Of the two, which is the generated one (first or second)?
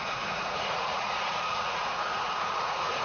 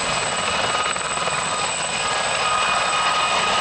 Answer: first